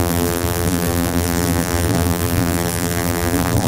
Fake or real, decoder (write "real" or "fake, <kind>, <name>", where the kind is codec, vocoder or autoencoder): fake, vocoder, BigVGAN v2